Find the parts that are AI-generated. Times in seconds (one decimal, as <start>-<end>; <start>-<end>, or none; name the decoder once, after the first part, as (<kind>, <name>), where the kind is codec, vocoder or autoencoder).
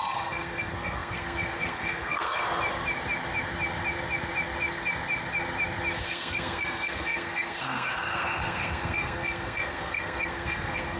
0.0-2.4 (codec, SNAC); 6.0-11.0